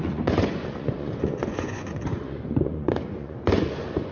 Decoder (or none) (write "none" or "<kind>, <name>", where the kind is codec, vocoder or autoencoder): vocoder, Vocos